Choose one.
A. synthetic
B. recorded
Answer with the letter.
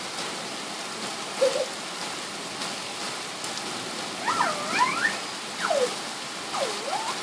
B